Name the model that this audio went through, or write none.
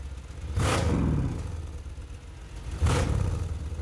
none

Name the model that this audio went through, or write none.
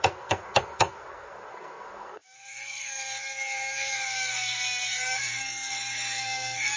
codec, SNAC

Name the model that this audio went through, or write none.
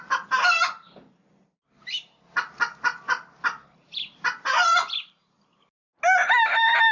none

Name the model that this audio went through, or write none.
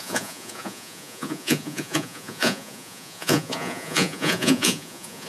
vocoder, Vocos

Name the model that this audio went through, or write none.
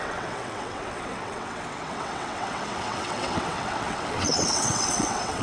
vocoder, WaveNeXt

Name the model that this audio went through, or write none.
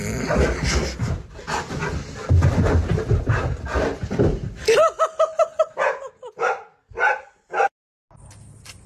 none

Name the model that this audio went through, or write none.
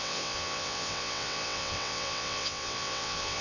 vocoder, WaveNeXt